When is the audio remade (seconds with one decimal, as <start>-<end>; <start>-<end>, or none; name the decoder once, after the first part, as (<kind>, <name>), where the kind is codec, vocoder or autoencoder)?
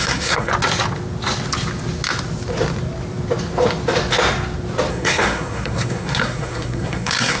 0.0-0.5 (codec, SNAC); 4.9-7.4